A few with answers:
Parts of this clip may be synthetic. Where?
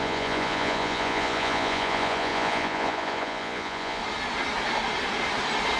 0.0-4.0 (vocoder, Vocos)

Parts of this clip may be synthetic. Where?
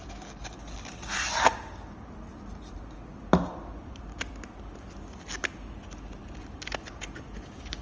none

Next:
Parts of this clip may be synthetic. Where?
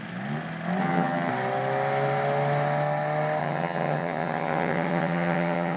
0.8-1.3 (vocoder, HiFi-GAN); 3.4-5.8